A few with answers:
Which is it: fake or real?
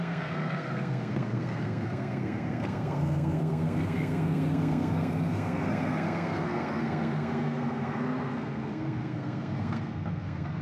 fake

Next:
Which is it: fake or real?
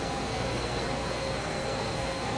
fake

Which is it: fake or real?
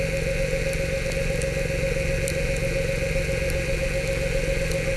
real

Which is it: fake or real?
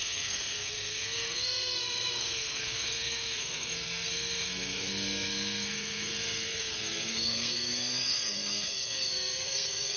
fake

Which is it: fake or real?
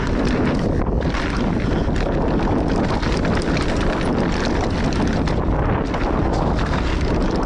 real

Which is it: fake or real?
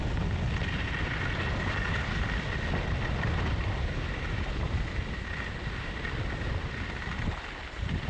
real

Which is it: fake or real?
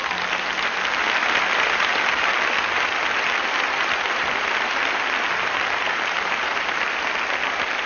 real